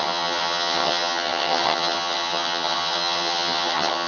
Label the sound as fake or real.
fake